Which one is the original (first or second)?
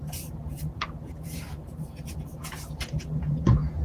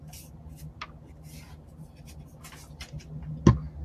second